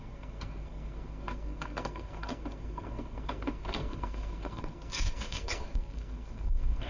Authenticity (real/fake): fake